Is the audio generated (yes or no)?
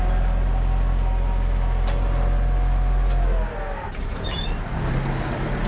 no